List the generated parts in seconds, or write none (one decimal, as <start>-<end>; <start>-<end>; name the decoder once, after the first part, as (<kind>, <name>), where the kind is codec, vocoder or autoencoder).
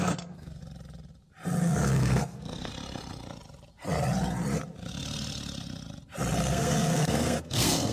0.0-0.6 (codec, SNAC); 1.6-2.7; 6.4-7.9